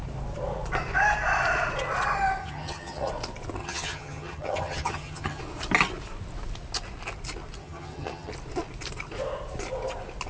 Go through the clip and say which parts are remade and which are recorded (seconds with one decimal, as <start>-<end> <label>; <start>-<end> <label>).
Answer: 0.0-2.4 recorded; 2.4-3.1 remade; 3.1-3.6 recorded; 3.6-5.4 remade; 5.4-7.6 recorded; 7.6-8.3 remade; 8.3-10.3 recorded